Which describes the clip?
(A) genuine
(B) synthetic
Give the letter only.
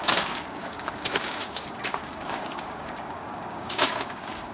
B